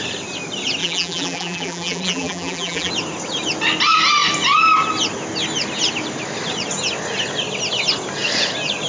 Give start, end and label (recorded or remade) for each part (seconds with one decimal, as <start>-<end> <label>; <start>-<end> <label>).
0.0-0.8 recorded; 0.8-2.9 remade; 2.9-8.9 recorded